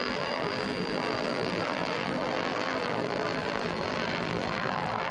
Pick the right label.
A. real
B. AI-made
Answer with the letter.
B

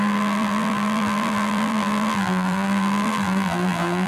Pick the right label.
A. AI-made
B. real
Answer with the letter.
A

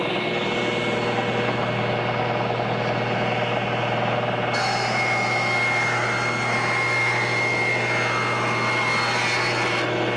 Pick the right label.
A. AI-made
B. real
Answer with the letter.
B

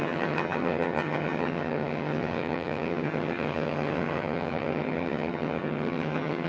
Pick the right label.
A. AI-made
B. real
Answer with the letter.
A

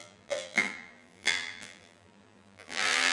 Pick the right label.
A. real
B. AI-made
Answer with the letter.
B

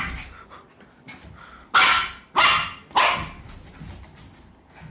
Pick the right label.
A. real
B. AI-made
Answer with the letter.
A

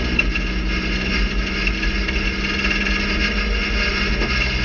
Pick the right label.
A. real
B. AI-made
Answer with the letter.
A